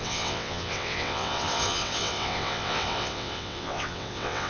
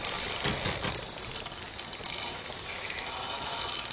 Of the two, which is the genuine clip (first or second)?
second